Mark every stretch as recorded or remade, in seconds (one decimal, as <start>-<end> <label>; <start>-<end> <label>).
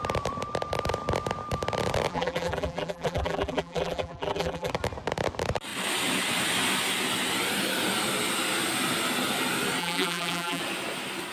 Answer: 0.0-2.1 recorded; 2.1-4.7 remade; 4.7-9.8 recorded; 9.8-10.6 remade; 10.6-11.3 recorded